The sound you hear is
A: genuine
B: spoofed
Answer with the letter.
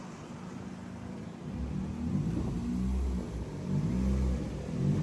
A